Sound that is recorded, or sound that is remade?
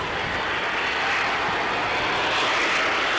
recorded